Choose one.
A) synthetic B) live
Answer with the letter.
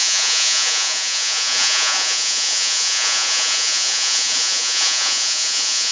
A